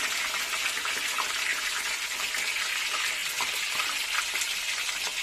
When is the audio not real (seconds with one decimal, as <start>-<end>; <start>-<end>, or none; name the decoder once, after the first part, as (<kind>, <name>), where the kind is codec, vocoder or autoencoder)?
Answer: none